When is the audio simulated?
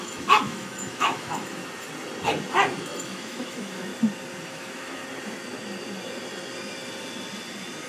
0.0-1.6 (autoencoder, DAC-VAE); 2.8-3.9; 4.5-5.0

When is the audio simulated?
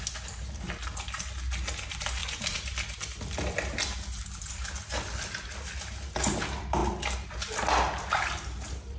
none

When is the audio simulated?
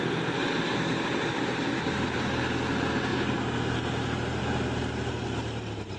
none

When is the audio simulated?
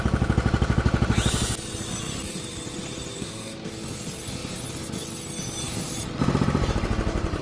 3.2-3.7 (codec, SNAC)